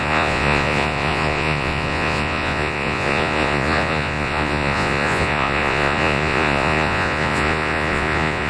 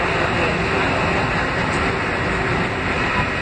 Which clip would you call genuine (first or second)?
second